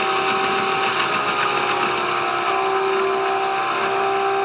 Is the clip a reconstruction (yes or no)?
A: no